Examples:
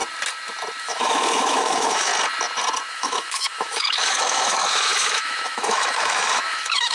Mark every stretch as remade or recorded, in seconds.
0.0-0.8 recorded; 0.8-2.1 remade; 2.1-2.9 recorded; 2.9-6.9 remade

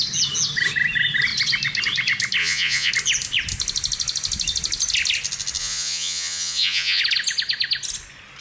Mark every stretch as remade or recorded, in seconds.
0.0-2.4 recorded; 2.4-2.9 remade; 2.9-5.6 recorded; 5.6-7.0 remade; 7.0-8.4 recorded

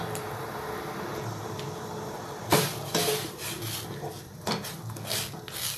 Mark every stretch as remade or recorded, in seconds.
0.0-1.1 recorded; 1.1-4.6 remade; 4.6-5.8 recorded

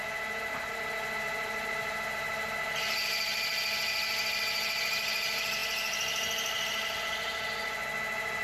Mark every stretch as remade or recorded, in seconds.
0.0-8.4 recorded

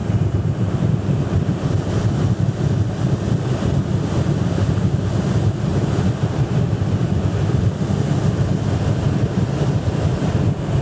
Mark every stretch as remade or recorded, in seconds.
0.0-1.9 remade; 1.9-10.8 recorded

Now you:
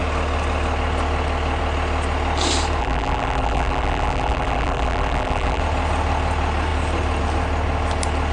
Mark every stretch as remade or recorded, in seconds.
0.0-2.8 recorded; 2.8-5.6 remade; 5.6-8.3 recorded